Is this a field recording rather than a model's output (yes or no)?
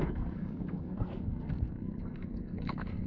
no